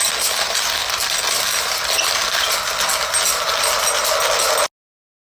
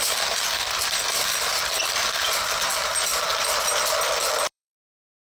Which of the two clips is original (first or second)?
first